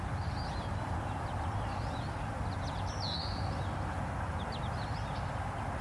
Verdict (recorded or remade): recorded